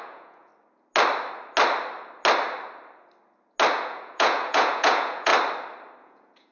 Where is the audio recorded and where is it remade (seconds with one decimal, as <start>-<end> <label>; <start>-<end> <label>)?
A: 0.0-0.5 remade; 0.5-3.7 recorded; 3.7-5.3 remade; 5.3-6.0 recorded; 6.0-6.5 remade